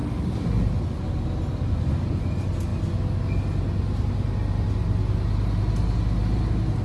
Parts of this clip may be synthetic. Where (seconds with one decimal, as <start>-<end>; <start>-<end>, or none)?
none